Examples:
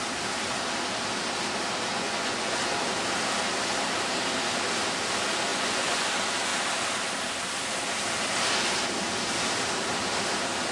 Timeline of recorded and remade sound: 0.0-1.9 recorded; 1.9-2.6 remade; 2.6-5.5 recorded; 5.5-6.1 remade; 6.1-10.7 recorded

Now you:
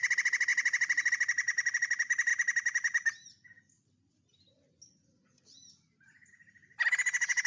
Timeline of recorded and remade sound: 0.0-7.5 recorded

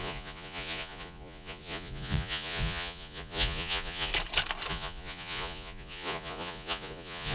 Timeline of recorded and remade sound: 0.0-4.1 remade; 4.1-4.7 recorded; 4.7-7.3 remade

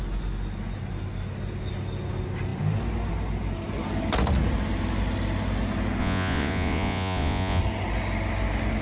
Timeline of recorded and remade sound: 0.0-6.0 recorded; 6.0-7.6 remade; 7.6-8.8 recorded

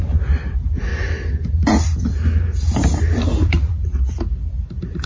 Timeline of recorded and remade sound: 0.0-5.1 recorded